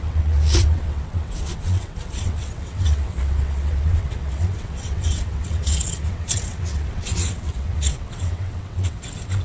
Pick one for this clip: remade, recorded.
remade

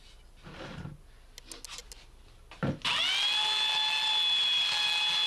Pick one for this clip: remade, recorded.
recorded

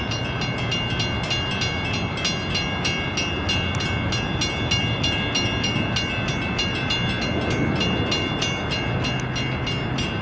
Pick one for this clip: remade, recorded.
recorded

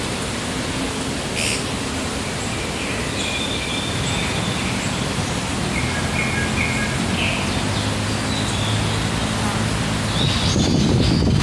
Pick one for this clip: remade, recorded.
recorded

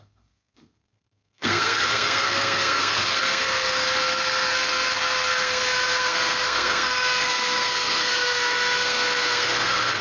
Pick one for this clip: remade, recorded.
remade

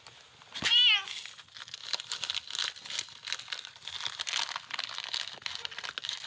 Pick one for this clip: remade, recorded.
recorded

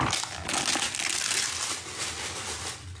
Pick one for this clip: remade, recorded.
recorded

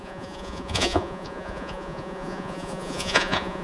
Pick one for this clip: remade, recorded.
remade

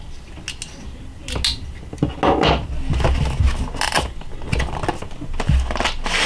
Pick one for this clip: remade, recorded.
recorded